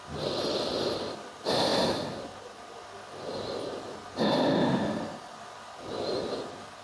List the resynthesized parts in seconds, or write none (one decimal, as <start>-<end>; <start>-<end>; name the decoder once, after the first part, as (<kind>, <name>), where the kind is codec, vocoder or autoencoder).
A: none